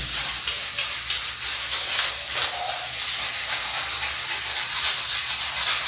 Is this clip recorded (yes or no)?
yes